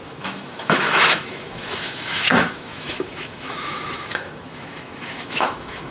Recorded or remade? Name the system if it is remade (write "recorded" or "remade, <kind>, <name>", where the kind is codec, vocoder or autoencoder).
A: remade, autoencoder, DAC-VAE